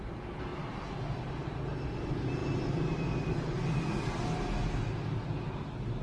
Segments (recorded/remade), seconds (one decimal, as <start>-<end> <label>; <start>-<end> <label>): 0.0-0.5 remade; 0.5-1.0 recorded; 1.0-2.4 remade; 2.4-6.0 recorded